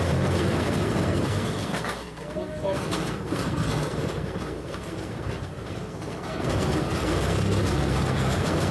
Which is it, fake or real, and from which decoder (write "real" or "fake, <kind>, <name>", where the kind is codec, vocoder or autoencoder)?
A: fake, codec, SNAC